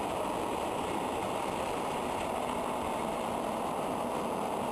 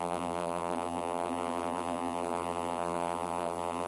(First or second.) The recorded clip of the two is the first